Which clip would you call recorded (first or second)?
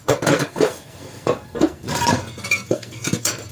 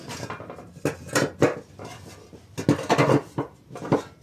second